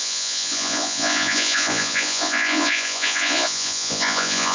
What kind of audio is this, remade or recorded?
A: remade